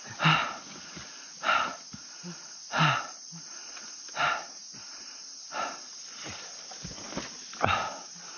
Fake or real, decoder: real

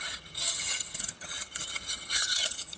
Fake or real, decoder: fake, vocoder, HiFi-GAN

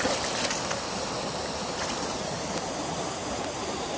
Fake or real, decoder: real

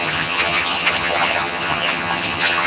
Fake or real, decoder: fake, vocoder, HiFi-GAN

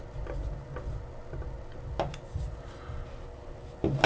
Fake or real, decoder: real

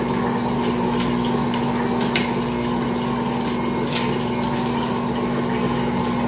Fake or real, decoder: real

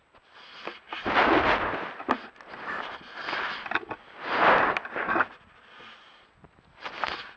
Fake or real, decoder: real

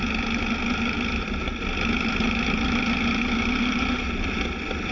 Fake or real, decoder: real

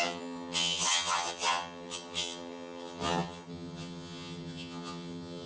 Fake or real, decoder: fake, vocoder, HiFi-GAN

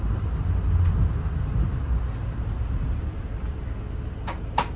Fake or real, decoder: real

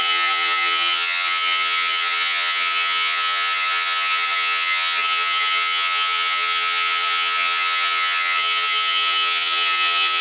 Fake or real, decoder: fake, vocoder, HiFi-GAN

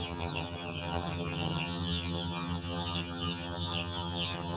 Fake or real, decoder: fake, vocoder, HiFi-GAN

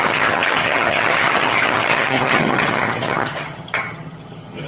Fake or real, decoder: fake, vocoder, HiFi-GAN